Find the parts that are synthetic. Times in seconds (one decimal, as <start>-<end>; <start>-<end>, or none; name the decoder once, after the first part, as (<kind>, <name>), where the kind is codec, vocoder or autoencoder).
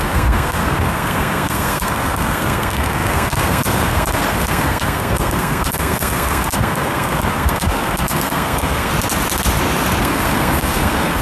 0.0-8.9 (codec, SNAC); 10.0-11.2